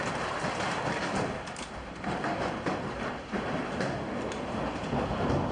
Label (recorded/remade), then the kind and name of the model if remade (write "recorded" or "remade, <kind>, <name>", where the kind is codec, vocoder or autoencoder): recorded